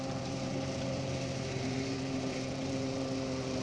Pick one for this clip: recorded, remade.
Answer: remade